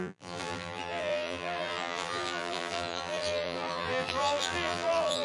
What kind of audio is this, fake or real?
fake